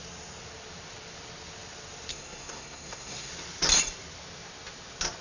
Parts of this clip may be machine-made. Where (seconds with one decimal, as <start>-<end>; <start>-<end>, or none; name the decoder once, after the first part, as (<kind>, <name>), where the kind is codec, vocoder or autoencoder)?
2.1-3.3 (codec, SNAC)